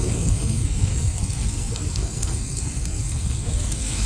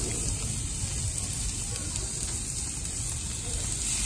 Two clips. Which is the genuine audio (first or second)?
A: second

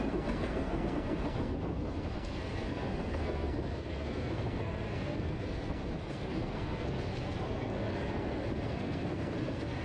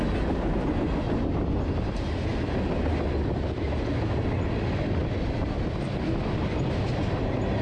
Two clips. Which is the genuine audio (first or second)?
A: second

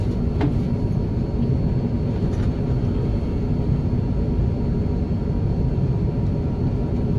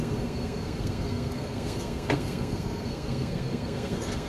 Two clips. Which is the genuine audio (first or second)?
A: first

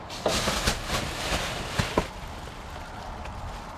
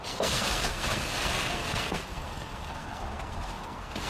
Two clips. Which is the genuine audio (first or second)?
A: first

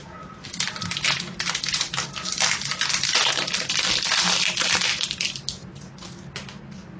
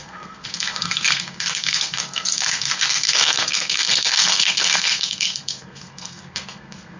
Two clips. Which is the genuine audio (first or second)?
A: first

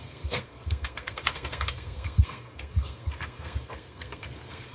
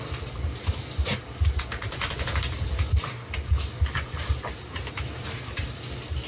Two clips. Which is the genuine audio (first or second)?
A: second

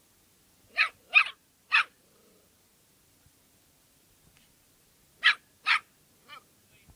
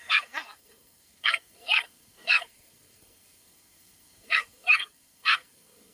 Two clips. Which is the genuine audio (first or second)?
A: first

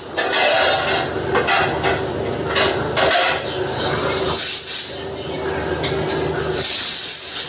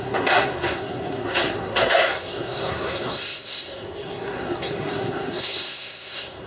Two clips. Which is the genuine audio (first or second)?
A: first